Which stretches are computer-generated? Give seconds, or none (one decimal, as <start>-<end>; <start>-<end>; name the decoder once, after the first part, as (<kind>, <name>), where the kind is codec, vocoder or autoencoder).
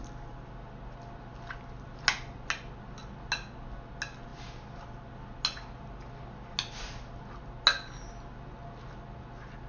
none